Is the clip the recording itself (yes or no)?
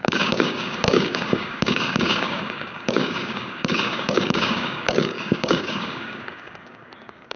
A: no